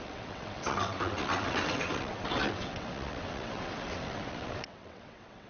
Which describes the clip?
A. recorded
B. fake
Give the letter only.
B